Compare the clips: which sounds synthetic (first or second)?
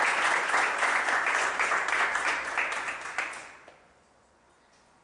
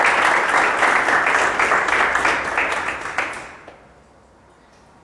first